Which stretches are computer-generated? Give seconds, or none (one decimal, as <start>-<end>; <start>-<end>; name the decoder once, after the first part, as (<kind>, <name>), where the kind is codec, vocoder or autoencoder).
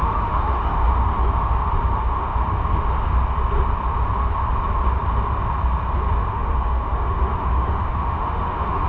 0.0-0.7 (autoencoder, DAC-VAE); 1.8-2.3; 6.3-8.9